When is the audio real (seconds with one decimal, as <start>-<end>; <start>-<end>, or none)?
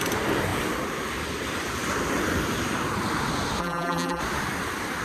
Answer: 0.0-3.6; 4.2-5.0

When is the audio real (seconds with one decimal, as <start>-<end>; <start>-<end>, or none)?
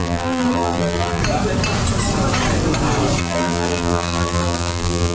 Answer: 1.2-3.2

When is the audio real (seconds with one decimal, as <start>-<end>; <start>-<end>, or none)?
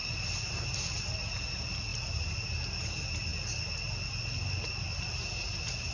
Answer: 0.0-1.9; 2.5-5.9